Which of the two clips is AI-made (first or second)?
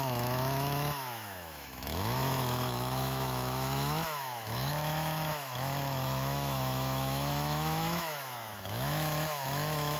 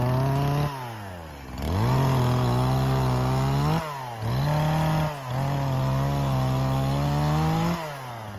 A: first